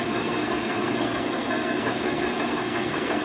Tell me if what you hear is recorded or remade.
remade